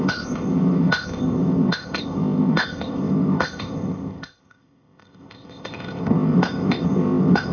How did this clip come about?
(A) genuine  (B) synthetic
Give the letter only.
B